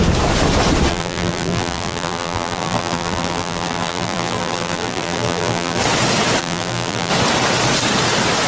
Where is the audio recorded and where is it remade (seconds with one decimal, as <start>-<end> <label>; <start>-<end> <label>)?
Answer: 0.0-0.9 recorded; 0.9-5.8 remade; 5.8-6.4 recorded; 6.4-7.1 remade; 7.1-8.5 recorded